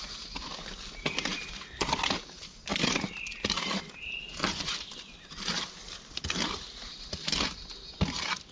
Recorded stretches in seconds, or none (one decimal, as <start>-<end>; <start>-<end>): 0.0-1.3; 2.0-2.7; 5.6-8.5